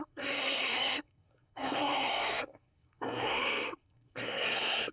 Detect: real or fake fake